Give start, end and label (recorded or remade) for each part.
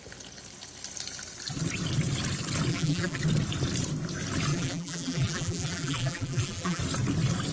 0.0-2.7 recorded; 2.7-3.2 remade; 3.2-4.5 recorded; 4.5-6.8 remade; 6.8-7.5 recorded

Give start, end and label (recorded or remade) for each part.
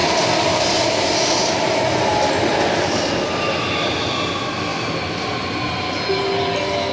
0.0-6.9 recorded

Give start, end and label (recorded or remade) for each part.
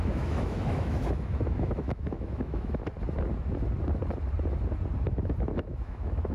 0.0-2.8 remade; 2.8-5.5 recorded; 5.5-6.3 remade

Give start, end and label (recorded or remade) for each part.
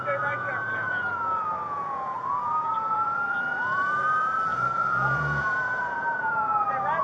0.0-7.0 remade